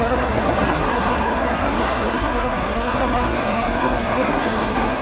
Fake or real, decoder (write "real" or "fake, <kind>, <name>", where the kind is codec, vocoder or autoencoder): fake, codec, SNAC